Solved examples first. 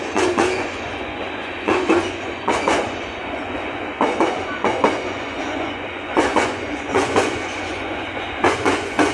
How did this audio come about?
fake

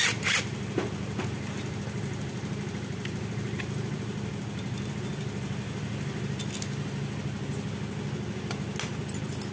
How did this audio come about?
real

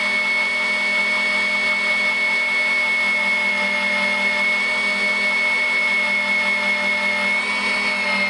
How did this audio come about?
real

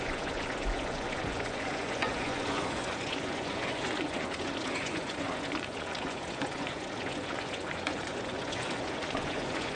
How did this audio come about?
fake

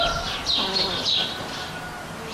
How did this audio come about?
real